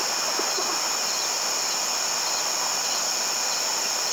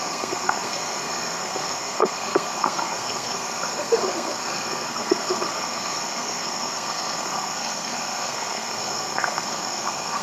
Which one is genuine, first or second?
first